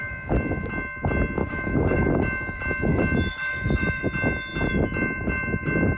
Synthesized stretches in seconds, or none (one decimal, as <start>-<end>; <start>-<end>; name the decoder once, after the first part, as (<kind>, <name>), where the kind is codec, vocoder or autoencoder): 1.4-2.1 (autoencoder, DAC-VAE); 3.3-4.0